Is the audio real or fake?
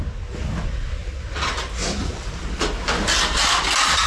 real